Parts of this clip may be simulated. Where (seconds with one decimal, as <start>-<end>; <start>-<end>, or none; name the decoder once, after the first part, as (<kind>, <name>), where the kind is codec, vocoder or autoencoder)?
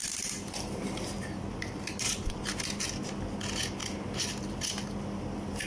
0.0-2.9 (vocoder, BigVGAN v2)